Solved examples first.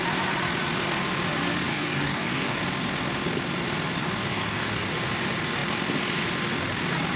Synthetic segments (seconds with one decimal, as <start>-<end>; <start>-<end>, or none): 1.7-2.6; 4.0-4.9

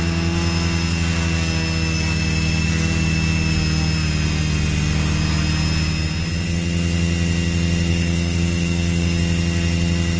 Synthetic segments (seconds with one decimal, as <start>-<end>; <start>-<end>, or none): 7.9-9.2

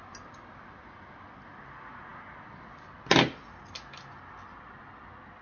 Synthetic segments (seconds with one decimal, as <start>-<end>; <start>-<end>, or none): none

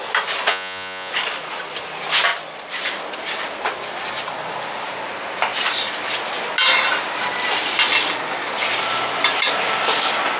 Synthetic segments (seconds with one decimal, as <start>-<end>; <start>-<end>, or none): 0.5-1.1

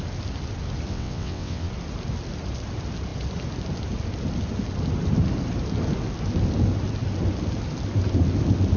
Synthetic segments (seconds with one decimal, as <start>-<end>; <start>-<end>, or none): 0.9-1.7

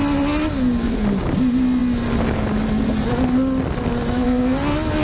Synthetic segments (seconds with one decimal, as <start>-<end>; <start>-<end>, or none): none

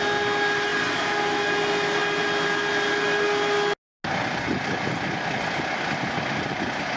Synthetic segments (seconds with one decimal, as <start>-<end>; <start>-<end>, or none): none

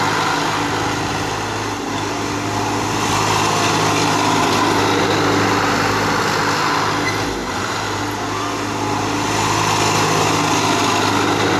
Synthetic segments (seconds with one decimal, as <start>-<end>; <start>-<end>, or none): 7.4-8.0